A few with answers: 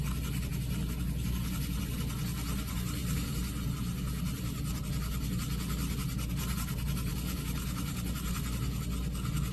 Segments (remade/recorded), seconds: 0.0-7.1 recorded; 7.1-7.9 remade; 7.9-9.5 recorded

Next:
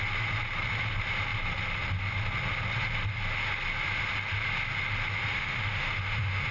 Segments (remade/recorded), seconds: 0.0-5.3 recorded; 5.3-6.5 remade

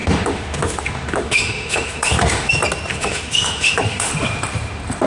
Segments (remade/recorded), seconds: 0.0-2.5 remade; 2.5-2.9 recorded; 2.9-4.1 remade; 4.1-5.1 recorded

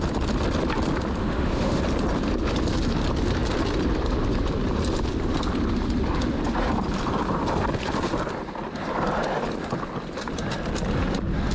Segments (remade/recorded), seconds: 0.0-1.2 recorded; 1.2-1.8 remade; 1.8-11.5 recorded

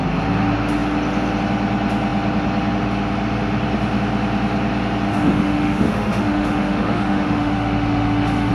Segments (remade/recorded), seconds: 0.0-5.1 recorded; 5.1-8.5 remade

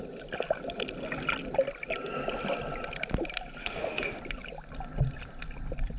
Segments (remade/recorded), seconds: 0.0-3.6 recorded; 3.6-4.2 remade; 4.2-6.0 recorded

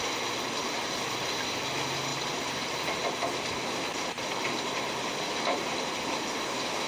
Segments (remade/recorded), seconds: 0.0-6.9 recorded